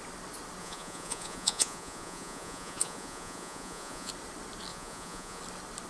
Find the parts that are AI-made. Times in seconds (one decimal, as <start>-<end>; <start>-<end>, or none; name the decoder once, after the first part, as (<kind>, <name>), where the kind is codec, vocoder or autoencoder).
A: 0.6-4.1 (vocoder, Vocos); 4.7-5.4